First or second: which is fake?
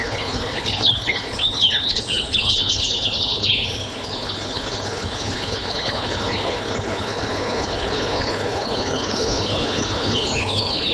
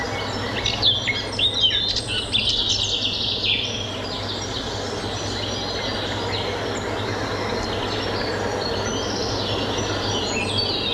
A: first